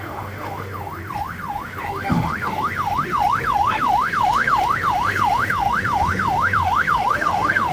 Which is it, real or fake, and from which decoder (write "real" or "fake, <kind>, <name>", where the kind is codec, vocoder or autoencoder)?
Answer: fake, autoencoder, DAC-VAE